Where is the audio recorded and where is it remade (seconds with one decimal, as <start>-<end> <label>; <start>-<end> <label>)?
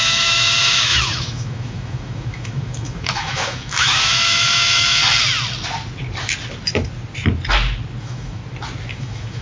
0.0-5.0 remade; 5.0-8.0 recorded; 8.0-8.4 remade; 8.4-8.9 recorded; 8.9-9.4 remade